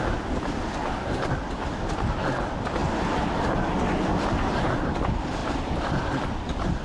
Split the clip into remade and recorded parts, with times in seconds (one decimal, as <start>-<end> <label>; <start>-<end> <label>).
0.0-0.8 recorded; 0.8-1.4 remade; 1.4-2.8 recorded; 2.8-4.6 remade; 4.6-5.4 recorded; 5.4-6.2 remade; 6.2-6.8 recorded